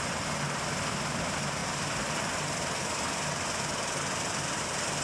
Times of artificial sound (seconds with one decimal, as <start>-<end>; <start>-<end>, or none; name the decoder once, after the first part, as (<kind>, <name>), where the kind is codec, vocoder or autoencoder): 1.6-4.6 (vocoder, BigVGAN v2)